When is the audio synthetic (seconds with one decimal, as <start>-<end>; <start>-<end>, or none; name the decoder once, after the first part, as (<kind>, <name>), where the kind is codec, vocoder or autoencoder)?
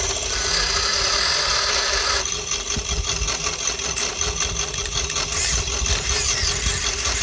none